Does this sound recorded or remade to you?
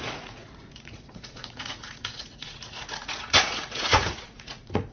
remade